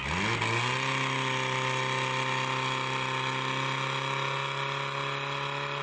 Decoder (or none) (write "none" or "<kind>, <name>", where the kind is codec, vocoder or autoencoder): none